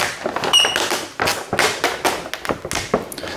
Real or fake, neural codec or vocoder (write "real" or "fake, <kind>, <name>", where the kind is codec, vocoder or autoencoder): real